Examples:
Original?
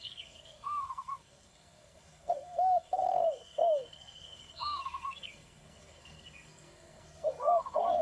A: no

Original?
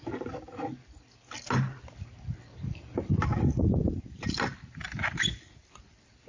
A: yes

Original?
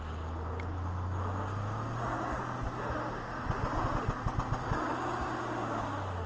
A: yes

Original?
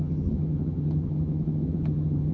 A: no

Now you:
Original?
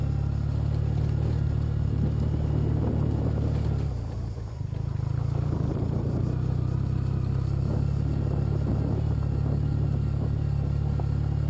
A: yes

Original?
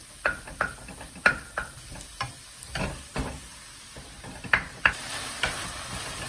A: yes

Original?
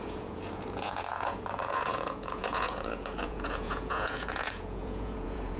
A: no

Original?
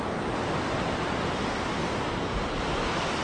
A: yes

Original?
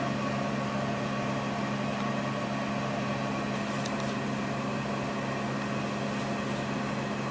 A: yes